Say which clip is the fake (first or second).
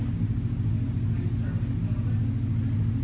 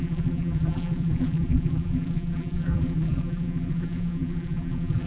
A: second